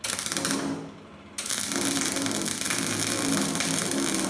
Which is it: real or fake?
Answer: real